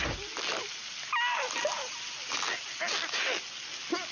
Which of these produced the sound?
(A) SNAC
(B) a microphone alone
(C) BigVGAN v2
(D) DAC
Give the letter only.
B